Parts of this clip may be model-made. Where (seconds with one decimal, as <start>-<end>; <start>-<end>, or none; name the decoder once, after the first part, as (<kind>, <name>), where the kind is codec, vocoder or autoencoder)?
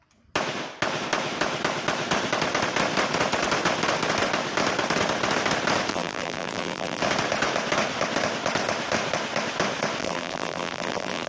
5.9-7.0 (vocoder, BigVGAN v2); 10.0-11.3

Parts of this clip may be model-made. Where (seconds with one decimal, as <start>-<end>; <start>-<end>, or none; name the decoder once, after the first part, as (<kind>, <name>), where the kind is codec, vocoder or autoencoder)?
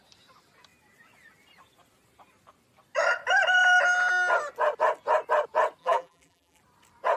5.8-6.6 (vocoder, BigVGAN v2)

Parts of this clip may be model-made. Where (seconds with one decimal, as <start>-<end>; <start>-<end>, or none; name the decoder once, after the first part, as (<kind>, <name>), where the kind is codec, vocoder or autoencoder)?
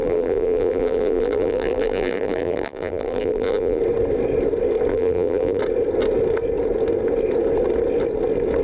0.0-3.8 (vocoder, BigVGAN v2); 4.9-5.6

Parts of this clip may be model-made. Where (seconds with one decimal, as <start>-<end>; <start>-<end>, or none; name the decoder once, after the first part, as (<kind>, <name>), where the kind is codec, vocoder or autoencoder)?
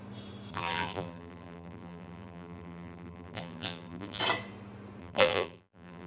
0.5-4.2 (vocoder, BigVGAN v2); 5.0-6.1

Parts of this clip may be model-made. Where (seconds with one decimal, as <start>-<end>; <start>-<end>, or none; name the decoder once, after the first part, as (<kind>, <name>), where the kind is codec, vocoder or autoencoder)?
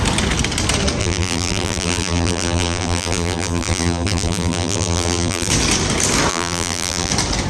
1.0-5.5 (vocoder, BigVGAN v2); 6.3-7.1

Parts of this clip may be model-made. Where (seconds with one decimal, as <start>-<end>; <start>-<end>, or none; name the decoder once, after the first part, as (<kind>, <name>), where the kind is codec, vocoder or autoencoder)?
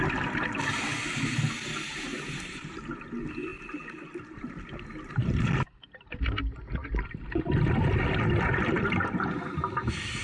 2.1-2.8 (vocoder, BigVGAN v2)